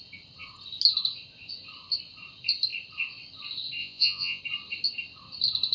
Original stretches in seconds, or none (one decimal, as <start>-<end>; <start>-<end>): 0.0-3.8; 4.4-5.7

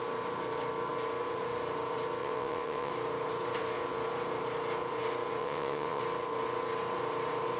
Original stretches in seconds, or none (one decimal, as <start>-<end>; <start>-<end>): 0.0-2.2; 2.9-5.4; 6.0-7.6

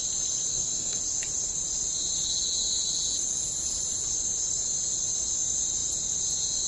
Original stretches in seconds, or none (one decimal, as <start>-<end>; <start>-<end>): 0.0-0.5; 1.0-6.7